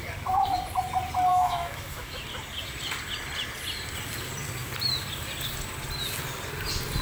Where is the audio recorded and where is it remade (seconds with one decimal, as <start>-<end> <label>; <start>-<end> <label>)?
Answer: 0.0-1.3 recorded; 1.3-2.2 remade; 2.2-7.0 recorded